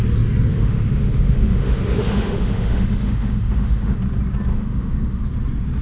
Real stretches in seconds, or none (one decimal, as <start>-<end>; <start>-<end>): 0.0-0.5; 4.0-4.5; 5.2-5.8